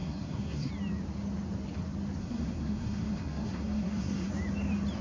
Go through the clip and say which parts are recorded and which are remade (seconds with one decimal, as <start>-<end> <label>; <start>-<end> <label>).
0.0-0.7 remade; 0.7-2.2 recorded; 2.2-4.3 remade; 4.3-5.0 recorded